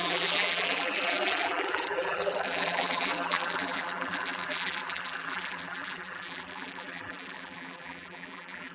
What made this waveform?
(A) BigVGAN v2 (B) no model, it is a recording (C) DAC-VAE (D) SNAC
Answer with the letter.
A